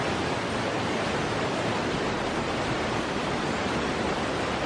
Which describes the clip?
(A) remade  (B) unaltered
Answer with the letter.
A